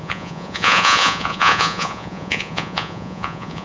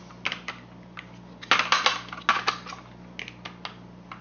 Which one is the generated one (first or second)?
first